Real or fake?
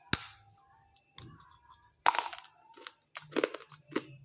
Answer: real